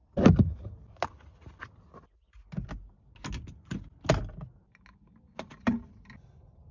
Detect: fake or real real